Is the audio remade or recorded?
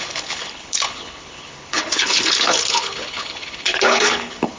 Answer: remade